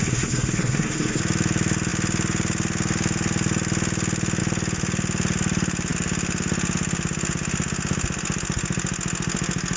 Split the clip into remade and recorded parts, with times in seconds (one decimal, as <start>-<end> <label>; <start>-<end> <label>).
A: 0.0-1.2 remade; 1.2-9.8 recorded